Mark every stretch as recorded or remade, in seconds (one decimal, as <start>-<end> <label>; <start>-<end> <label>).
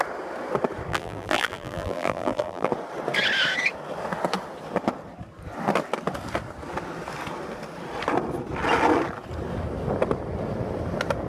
0.0-0.9 recorded; 0.9-2.7 remade; 2.7-11.3 recorded